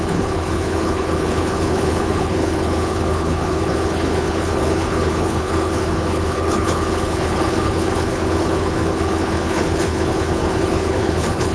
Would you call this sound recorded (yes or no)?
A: no